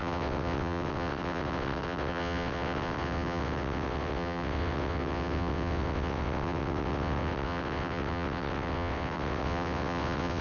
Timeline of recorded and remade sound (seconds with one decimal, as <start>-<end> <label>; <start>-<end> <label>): 0.0-10.4 remade